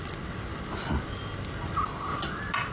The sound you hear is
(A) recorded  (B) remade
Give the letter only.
A